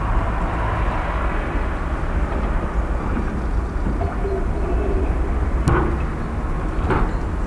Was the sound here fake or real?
real